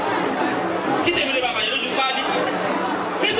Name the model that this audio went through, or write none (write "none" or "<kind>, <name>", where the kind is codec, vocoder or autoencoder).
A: none